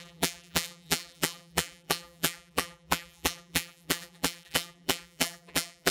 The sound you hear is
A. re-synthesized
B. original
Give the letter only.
A